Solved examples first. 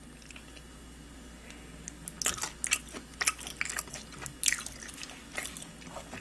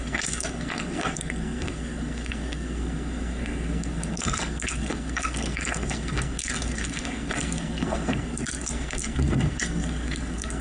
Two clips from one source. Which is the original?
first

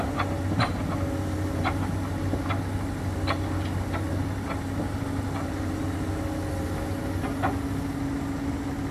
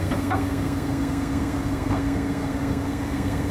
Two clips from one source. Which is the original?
first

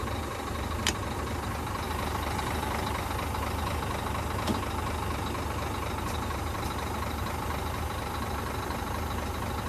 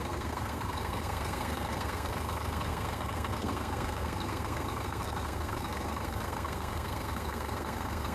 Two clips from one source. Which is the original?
first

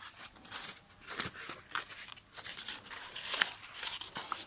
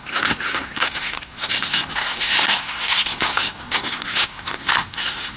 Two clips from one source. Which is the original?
first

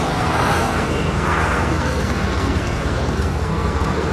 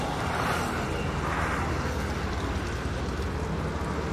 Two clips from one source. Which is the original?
second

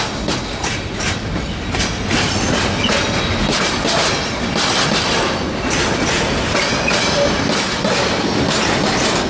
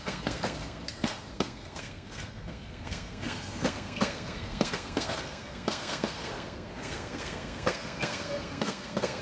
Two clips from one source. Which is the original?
first